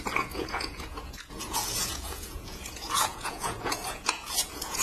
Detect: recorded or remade remade